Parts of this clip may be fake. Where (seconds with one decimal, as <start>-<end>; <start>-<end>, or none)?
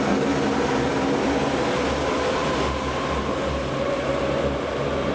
none